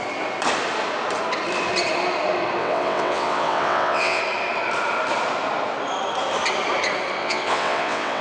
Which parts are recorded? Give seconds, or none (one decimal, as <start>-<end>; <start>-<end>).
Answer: 0.0-2.6; 4.2-7.2